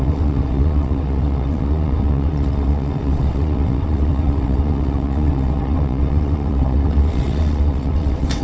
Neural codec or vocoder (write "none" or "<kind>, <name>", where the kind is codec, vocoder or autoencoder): vocoder, WaveNeXt